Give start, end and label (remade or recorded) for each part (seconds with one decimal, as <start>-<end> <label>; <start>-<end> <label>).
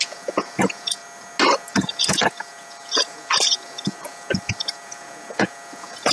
0.0-1.0 remade; 1.0-1.5 recorded; 1.5-6.1 remade